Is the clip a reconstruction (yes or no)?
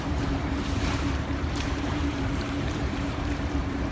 yes